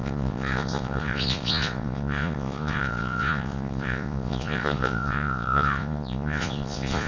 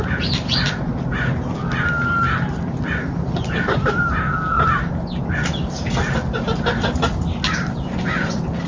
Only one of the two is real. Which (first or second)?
second